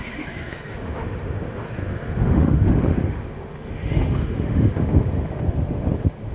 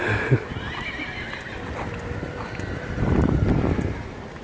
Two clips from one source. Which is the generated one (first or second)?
first